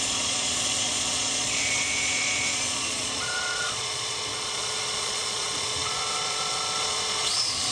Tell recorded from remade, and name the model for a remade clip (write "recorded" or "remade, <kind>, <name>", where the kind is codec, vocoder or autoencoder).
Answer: remade, vocoder, Vocos